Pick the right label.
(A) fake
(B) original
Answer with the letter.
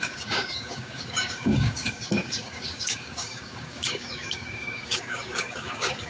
A